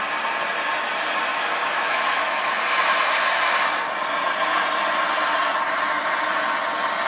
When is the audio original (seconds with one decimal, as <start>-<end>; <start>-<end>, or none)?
0.0-1.3; 2.6-7.1